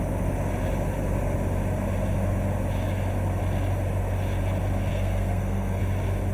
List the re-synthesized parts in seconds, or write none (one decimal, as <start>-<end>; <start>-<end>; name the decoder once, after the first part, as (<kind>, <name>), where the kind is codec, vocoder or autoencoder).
4.9-5.8 (codec, SNAC)